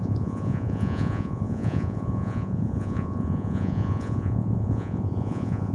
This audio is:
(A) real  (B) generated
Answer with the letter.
B